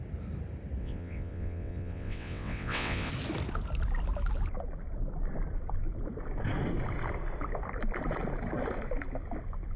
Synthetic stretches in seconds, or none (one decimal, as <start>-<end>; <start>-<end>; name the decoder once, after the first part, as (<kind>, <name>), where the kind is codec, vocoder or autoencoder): 0.8-3.1 (vocoder, WaveNeXt)